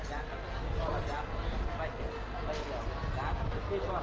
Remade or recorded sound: recorded